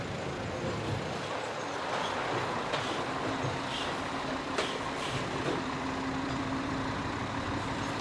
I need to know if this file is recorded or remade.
remade